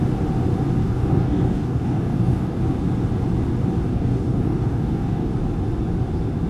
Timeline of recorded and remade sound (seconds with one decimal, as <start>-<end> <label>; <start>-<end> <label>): 0.0-0.8 recorded; 0.8-2.6 remade; 2.6-3.9 recorded; 3.9-5.3 remade; 5.3-6.5 recorded

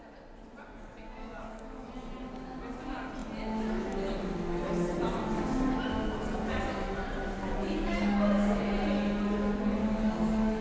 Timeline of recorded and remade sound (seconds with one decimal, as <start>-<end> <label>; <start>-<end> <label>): 0.0-0.6 recorded; 0.6-1.9 remade; 1.9-7.5 recorded; 7.5-8.6 remade; 8.6-9.8 recorded; 9.8-10.6 remade

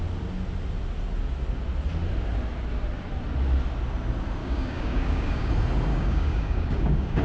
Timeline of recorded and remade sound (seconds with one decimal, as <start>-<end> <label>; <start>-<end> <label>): 0.0-4.4 recorded; 4.4-5.5 remade; 5.5-5.9 recorded; 5.9-7.2 remade